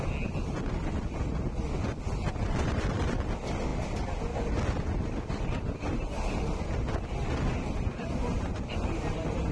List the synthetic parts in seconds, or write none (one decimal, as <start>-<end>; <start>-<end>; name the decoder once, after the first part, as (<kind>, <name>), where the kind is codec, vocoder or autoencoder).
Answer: none